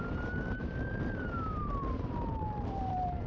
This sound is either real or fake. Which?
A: fake